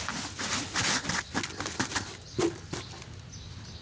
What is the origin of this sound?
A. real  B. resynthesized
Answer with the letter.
A